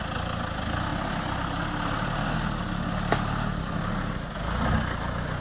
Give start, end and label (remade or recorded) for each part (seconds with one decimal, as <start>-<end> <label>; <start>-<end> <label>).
0.0-5.4 recorded